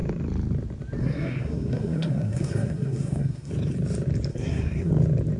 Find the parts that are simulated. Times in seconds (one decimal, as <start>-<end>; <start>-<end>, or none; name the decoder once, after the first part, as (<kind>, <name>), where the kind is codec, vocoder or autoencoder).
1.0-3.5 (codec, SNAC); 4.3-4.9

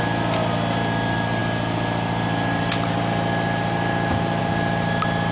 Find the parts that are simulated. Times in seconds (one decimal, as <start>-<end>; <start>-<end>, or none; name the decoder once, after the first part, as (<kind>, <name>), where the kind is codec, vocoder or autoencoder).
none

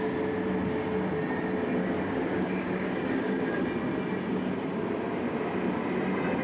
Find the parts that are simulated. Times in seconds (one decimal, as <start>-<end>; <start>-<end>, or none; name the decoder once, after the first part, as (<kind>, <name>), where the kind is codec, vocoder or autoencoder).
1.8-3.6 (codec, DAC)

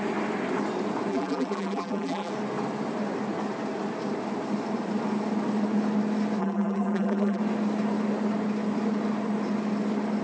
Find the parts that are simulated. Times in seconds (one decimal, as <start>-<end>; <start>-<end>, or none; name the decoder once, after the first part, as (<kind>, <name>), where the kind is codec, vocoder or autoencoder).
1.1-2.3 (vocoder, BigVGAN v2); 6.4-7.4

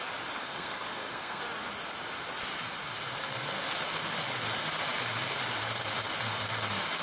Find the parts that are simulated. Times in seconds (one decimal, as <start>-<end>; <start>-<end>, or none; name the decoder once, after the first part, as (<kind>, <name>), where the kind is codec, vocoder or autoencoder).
0.4-1.4 (codec, SNAC)

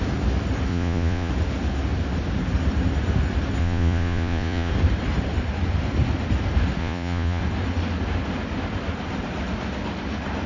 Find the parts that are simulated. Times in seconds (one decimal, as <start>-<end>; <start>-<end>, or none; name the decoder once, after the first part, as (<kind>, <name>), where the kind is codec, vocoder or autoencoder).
0.7-1.3 (vocoder, Vocos); 3.6-4.7; 6.8-7.4

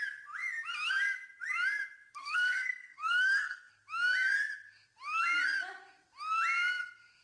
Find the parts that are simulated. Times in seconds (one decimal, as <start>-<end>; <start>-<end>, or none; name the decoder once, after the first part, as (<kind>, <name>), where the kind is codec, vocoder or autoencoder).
2.2-3.7 (codec, SNAC)

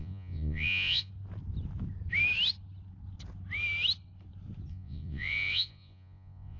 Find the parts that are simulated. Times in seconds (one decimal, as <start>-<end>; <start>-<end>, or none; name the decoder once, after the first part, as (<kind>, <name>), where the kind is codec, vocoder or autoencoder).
0.0-1.1 (vocoder, Vocos); 4.7-6.6